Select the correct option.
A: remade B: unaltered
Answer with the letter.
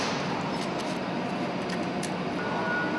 B